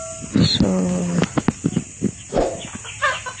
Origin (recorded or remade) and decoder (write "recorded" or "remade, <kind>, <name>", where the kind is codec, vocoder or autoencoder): recorded